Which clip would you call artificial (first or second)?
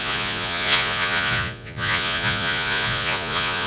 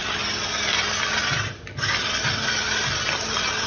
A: first